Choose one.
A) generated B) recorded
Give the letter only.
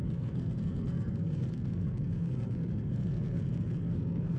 A